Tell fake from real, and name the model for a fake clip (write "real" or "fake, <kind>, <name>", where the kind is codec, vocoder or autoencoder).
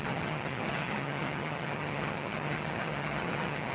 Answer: fake, vocoder, HiFi-GAN